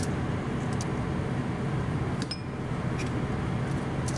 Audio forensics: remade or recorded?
recorded